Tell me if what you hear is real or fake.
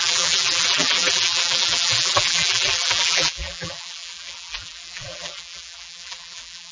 fake